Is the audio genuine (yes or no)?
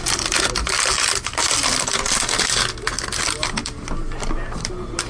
yes